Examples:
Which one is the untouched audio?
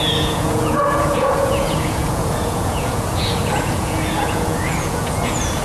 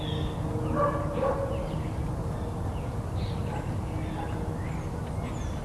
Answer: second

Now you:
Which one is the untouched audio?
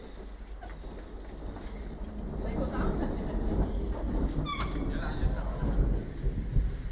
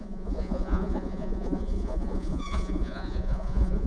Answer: first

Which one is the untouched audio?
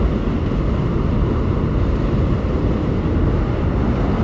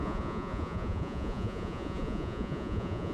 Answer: first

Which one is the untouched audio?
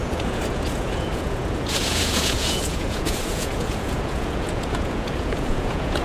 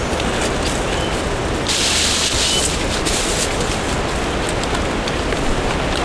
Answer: second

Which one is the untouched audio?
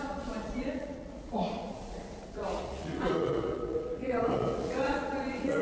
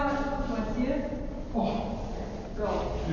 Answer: second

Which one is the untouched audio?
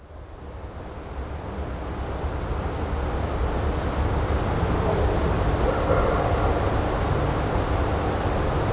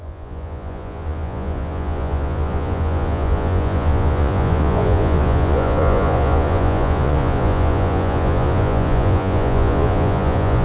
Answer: first